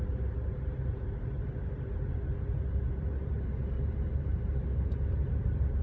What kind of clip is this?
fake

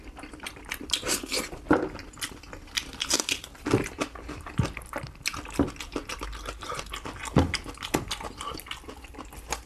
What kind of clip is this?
real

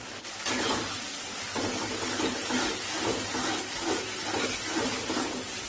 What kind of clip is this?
real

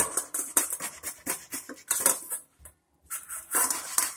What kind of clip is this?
fake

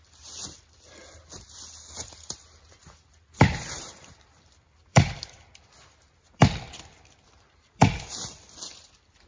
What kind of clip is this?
fake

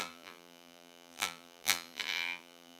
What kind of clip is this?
fake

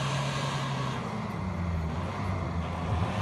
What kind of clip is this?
real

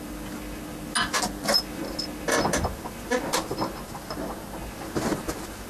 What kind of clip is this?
real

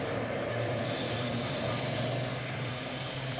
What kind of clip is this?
fake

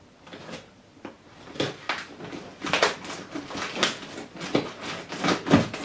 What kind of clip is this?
real